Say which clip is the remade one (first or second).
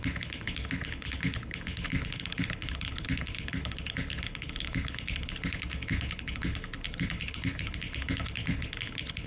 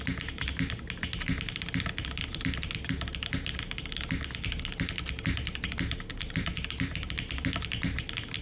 first